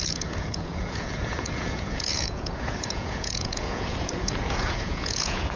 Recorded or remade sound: remade